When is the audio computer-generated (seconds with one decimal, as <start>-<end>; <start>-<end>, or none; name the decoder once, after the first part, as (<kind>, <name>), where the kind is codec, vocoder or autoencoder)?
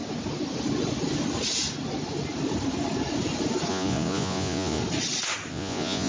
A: 3.7-4.8 (vocoder, Vocos); 5.5-6.1